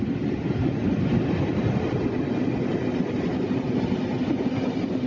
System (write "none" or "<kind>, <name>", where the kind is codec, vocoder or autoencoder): none